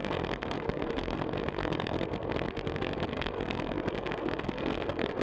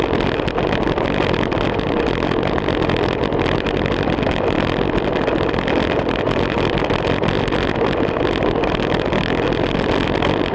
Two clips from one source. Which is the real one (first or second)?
second